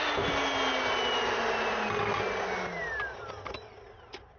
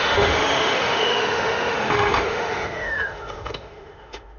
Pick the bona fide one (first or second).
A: first